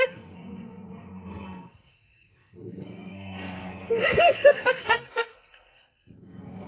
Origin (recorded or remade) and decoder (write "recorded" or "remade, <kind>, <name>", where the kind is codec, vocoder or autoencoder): remade, codec, SNAC